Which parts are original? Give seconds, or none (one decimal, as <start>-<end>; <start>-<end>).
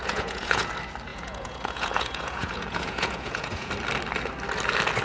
0.7-1.1; 3.7-5.0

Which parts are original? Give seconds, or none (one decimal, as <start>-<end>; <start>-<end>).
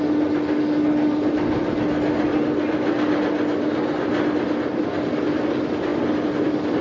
0.0-6.8